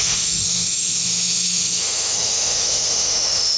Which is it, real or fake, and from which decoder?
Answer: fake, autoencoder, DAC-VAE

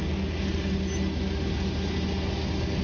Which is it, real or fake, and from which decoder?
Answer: real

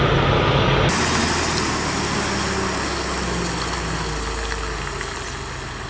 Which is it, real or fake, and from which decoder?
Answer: real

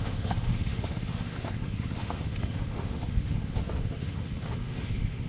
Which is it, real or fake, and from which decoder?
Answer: fake, autoencoder, DAC-VAE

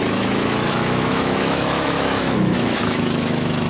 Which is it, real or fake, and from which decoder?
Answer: fake, autoencoder, DAC-VAE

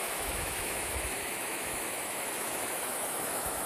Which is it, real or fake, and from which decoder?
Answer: fake, autoencoder, DAC-VAE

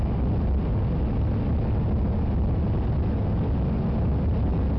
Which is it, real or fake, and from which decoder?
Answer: real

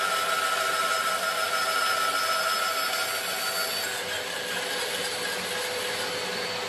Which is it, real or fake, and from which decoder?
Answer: real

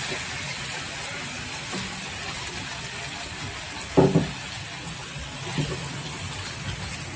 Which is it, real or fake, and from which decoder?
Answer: real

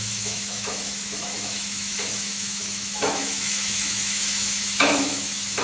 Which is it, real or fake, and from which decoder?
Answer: fake, autoencoder, DAC-VAE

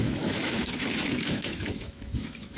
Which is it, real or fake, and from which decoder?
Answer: fake, autoencoder, DAC-VAE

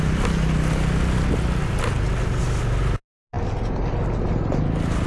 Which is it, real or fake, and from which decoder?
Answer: real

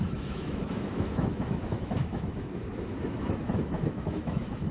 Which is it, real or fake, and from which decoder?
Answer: fake, autoencoder, DAC-VAE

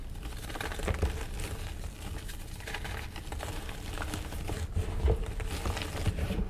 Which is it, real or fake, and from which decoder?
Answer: real